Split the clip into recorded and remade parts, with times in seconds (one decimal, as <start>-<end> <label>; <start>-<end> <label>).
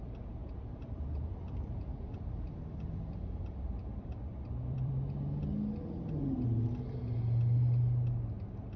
0.0-0.4 recorded; 0.4-4.9 remade; 4.9-8.8 recorded